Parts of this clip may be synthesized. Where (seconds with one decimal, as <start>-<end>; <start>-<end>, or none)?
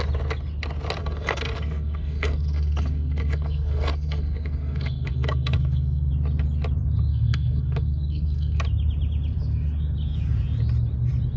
1.0-6.1; 7.1-8.6